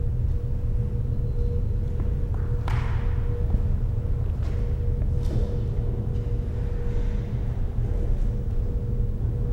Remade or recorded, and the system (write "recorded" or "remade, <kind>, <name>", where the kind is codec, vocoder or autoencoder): recorded